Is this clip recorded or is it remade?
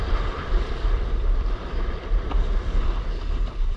remade